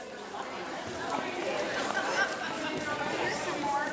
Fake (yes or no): yes